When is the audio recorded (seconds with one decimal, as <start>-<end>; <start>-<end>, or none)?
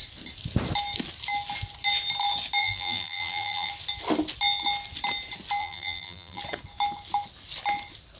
0.0-2.6; 3.7-5.6; 6.4-8.2